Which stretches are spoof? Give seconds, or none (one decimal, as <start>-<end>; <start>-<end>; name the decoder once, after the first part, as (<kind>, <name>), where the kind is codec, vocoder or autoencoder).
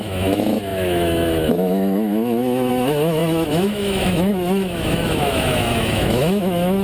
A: 0.0-6.8 (autoencoder, DAC-VAE)